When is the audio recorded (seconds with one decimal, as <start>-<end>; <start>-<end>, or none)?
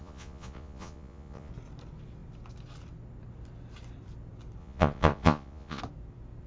1.5-4.6; 5.8-6.5